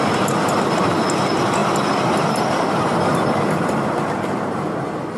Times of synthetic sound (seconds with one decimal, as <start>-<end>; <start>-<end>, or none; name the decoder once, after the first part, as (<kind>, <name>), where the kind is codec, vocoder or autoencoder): 1.6-4.7 (vocoder, BigVGAN v2)